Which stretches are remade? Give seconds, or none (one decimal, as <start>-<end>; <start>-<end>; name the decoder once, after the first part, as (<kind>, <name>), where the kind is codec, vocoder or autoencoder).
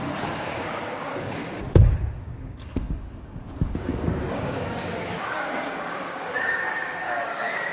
0.0-1.4 (codec, DAC); 2.2-7.7